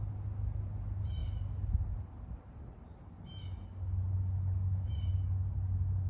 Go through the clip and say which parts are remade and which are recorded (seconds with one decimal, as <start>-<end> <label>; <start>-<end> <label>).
0.0-6.1 recorded